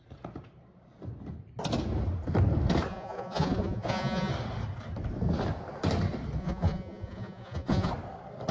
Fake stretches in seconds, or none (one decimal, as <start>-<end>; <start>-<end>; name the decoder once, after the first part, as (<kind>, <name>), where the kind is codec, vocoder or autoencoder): 2.9-4.3 (vocoder, Vocos); 6.4-7.9